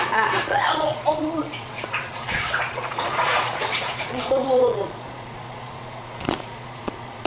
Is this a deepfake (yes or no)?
yes